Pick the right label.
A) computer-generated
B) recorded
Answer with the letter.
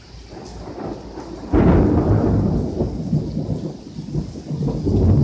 B